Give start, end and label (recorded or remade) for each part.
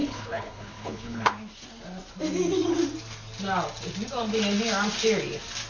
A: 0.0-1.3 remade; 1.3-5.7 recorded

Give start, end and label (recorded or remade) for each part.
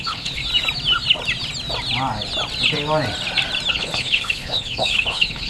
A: 0.0-0.4 remade; 0.4-3.7 recorded; 3.7-5.5 remade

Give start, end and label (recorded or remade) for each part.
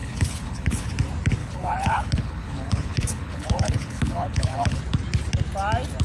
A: 0.0-0.9 remade; 0.9-1.4 recorded; 1.4-4.8 remade; 4.8-6.0 recorded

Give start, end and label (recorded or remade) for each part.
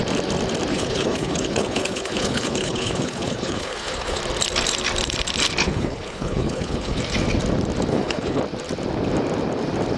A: 0.0-0.7 recorded; 0.7-4.2 remade; 4.2-5.6 recorded; 5.6-7.0 remade; 7.0-7.9 recorded; 7.9-8.4 remade; 8.4-10.0 recorded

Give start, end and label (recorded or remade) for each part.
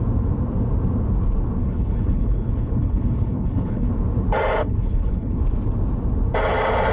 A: 0.0-1.6 recorded; 1.6-3.9 remade; 3.9-4.6 recorded; 4.6-5.4 remade; 5.4-6.9 recorded